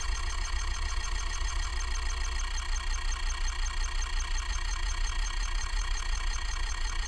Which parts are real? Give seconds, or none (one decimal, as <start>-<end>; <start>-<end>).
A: 1.7-4.5